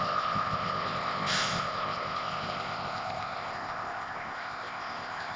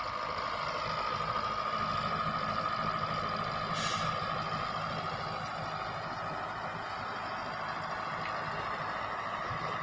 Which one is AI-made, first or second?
first